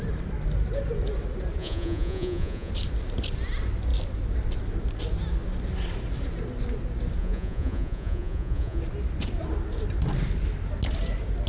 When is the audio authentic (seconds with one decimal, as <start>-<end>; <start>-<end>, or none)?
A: 0.0-1.6; 2.7-7.2; 8.8-11.5